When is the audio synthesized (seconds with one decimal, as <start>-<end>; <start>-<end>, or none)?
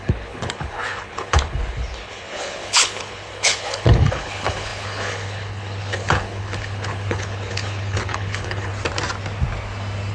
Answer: 0.0-8.7